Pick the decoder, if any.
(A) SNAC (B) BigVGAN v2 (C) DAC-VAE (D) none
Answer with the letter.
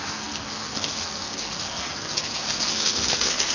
A